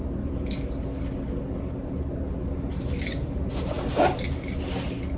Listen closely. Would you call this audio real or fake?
real